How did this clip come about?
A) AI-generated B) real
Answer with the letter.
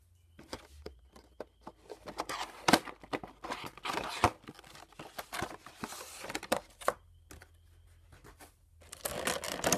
B